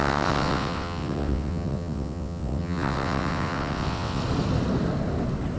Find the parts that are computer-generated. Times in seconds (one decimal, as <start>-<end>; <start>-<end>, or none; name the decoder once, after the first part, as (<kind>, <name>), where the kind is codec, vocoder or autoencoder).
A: 0.0-4.2 (vocoder, WaveNeXt)